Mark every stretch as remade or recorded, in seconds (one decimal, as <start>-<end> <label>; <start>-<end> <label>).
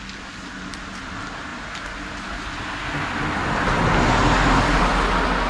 0.0-5.5 recorded